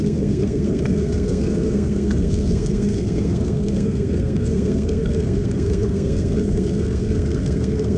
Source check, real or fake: fake